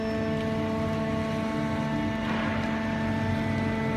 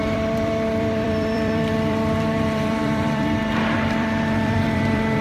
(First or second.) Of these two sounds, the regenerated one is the second